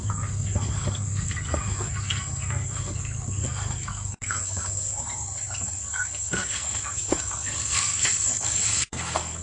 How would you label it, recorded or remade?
remade